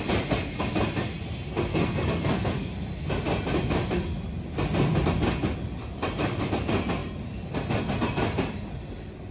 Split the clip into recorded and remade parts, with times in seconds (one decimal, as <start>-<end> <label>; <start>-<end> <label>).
0.0-1.7 recorded; 1.7-2.7 remade; 2.7-9.3 recorded